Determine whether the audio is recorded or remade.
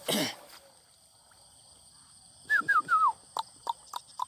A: recorded